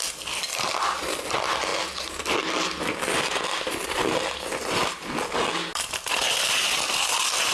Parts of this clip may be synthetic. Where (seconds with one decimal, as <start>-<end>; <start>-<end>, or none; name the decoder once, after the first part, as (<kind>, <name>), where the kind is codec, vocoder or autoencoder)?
none